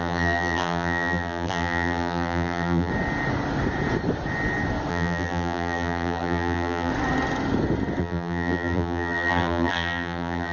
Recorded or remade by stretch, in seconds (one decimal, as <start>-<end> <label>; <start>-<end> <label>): 0.0-2.9 remade; 2.9-4.9 recorded; 4.9-6.9 remade; 6.9-8.0 recorded; 8.0-10.5 remade